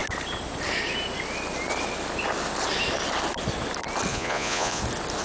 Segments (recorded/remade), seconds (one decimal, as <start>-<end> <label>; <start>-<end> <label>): 0.0-4.1 recorded; 4.1-4.8 remade; 4.8-5.2 recorded